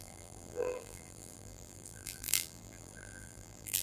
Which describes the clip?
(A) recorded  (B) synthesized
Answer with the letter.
B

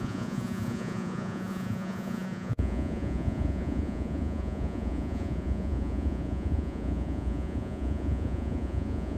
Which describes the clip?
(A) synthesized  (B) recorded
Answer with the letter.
A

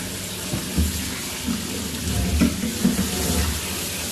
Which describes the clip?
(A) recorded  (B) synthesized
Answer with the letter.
A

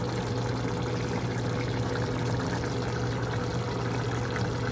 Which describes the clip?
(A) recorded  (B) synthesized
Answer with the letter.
A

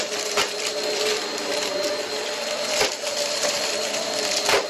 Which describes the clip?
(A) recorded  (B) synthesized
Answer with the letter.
B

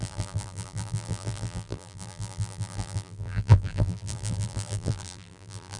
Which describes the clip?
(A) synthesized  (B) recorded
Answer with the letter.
A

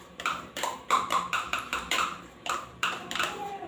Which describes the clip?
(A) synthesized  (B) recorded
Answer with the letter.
A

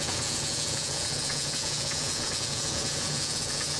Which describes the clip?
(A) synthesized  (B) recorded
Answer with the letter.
A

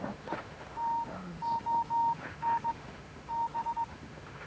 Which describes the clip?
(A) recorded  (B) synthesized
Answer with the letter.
B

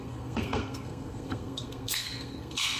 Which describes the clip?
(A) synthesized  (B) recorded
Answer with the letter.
A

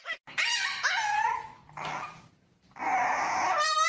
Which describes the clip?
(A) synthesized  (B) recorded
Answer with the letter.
B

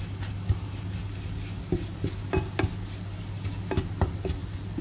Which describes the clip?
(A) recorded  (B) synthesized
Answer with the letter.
A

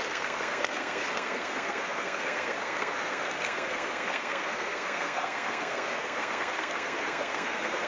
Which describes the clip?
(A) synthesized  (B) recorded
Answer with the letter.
A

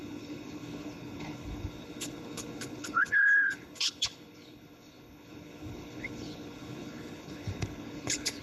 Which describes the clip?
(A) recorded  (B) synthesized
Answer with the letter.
B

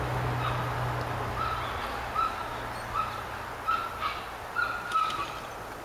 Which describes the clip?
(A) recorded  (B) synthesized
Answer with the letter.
A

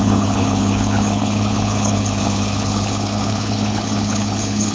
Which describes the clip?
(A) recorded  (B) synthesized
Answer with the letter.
B